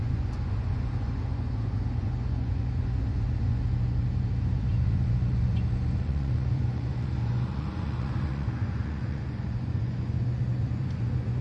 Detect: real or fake fake